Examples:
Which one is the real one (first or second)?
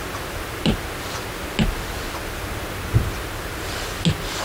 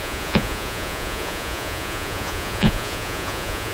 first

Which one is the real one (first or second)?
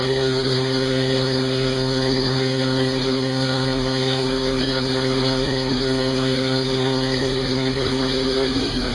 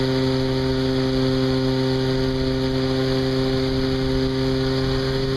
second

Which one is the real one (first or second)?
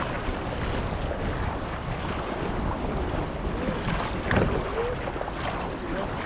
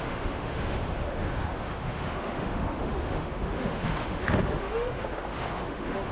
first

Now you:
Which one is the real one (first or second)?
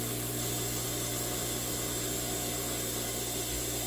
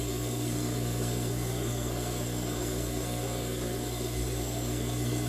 first